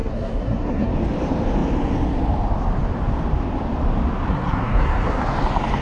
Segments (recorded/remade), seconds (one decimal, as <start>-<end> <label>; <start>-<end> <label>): 0.0-0.9 remade; 0.9-4.3 recorded; 4.3-5.2 remade; 5.2-5.8 recorded